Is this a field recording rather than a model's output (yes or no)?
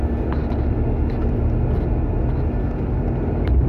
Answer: yes